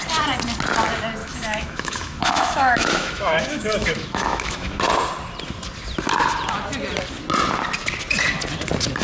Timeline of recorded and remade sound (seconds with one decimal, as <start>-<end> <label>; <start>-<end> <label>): 0.0-1.2 recorded; 1.2-4.8 remade; 4.8-9.0 recorded